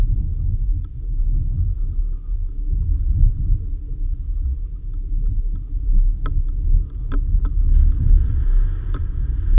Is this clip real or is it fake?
real